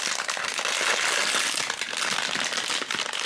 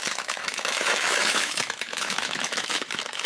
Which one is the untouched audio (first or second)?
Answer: first